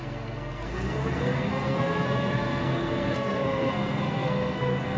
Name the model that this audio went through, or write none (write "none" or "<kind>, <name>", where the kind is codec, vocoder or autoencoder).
codec, SNAC